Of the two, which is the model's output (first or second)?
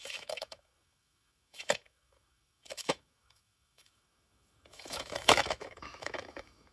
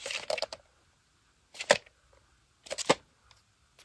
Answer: first